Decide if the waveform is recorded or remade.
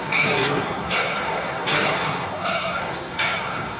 remade